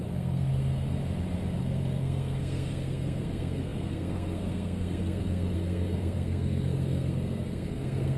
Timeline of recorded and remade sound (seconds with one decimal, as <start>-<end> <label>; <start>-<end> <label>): 0.0-1.0 remade; 1.0-1.6 recorded; 1.6-8.2 remade